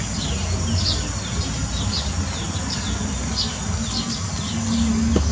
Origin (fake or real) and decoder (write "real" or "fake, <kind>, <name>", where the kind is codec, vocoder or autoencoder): real